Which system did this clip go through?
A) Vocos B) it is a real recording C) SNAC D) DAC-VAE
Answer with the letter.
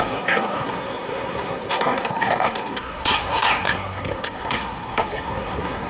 C